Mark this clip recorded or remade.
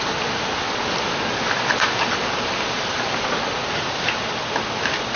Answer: recorded